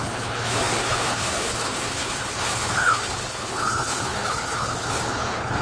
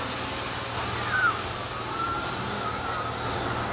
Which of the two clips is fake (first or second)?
first